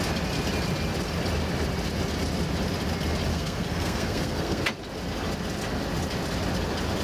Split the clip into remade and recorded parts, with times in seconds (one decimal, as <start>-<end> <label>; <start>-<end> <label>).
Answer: 0.0-3.3 recorded; 3.3-4.6 remade; 4.6-7.0 recorded